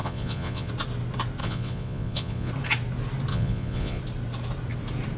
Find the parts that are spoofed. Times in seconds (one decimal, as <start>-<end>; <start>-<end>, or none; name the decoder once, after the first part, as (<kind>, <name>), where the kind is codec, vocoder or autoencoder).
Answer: 0.0-0.7 (vocoder, Vocos); 1.4-2.5; 3.3-4.0